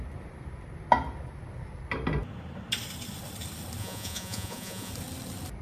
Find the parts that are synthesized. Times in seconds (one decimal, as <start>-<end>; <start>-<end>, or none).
3.8-4.9